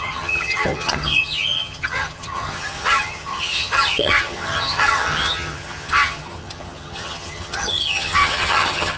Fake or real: fake